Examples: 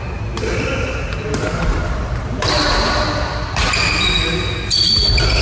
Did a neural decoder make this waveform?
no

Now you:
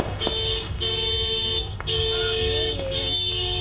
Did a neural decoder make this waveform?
yes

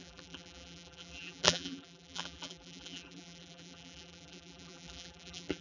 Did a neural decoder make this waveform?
yes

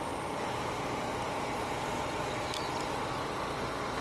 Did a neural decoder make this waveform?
no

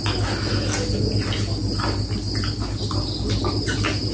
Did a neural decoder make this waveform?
no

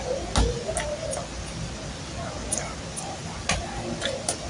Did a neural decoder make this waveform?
no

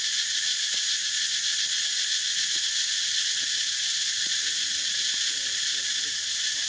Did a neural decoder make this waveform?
no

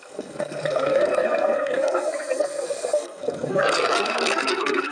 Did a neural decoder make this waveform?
yes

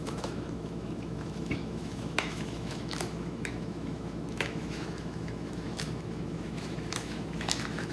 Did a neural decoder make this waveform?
yes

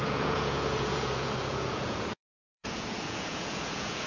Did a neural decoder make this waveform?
yes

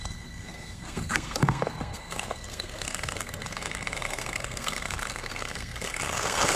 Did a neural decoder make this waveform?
yes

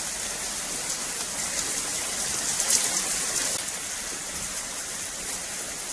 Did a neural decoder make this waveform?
no